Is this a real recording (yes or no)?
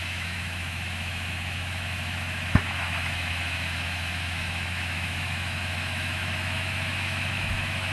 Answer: no